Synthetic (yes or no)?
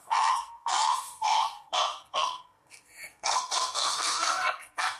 yes